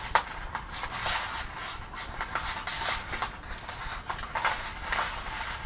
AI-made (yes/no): no